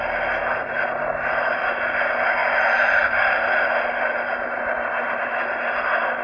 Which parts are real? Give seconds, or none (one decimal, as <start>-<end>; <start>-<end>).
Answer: 0.0-2.4; 3.6-6.2